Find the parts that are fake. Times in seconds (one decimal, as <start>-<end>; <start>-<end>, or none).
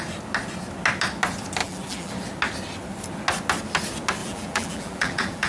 1.6-2.1; 4.2-5.5